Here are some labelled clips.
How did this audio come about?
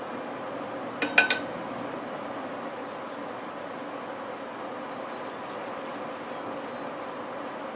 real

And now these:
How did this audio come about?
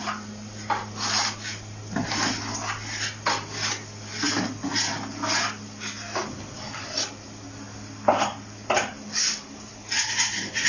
real